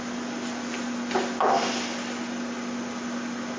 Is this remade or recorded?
recorded